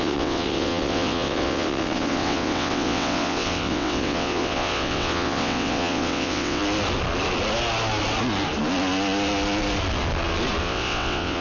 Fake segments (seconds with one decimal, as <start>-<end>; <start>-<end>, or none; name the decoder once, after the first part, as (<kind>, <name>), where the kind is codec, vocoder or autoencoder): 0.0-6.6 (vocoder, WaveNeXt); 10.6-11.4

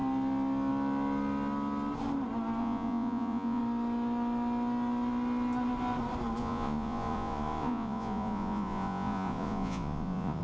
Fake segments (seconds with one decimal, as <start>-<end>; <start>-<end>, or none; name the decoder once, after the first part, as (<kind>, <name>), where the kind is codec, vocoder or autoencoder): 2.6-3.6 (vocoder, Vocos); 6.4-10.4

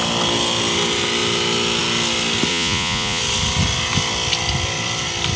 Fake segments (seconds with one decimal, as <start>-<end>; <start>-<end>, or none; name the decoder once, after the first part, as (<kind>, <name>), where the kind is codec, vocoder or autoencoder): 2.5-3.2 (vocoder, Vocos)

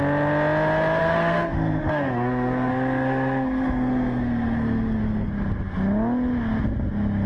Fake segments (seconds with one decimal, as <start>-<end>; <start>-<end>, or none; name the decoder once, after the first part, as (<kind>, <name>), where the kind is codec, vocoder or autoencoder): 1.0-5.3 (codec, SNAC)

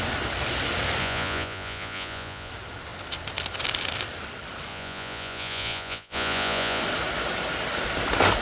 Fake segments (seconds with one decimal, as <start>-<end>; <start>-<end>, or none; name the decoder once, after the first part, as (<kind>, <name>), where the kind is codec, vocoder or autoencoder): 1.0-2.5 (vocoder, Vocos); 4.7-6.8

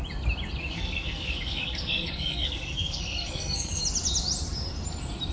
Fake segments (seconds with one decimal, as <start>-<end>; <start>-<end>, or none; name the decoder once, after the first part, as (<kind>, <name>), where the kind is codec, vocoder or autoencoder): 0.6-3.8 (codec, SNAC)